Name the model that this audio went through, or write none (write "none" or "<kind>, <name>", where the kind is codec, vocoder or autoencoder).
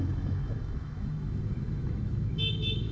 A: autoencoder, DAC-VAE